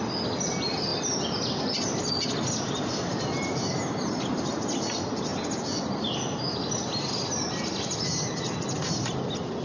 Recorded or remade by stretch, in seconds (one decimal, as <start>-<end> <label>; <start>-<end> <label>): 0.0-9.6 recorded